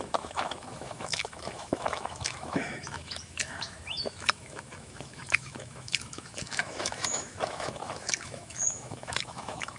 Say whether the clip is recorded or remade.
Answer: remade